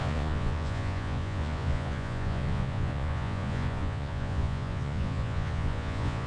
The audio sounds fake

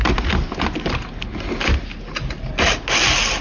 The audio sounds real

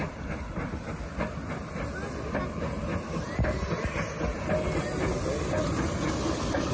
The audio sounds real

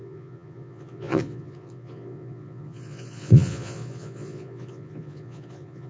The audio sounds fake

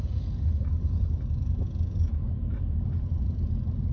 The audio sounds fake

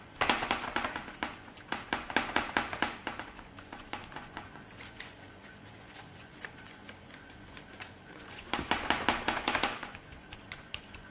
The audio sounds fake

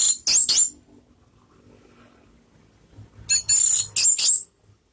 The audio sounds real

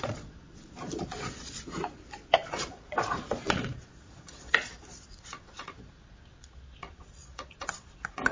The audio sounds fake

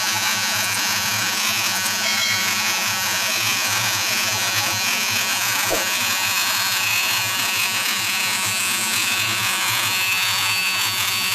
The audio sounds fake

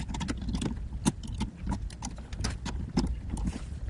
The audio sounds real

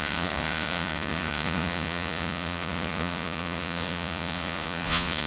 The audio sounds fake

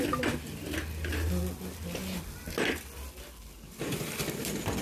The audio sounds real